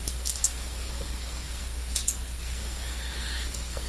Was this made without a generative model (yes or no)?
no